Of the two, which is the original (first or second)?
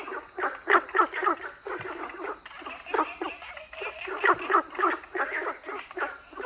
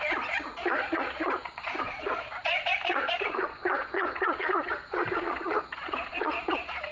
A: first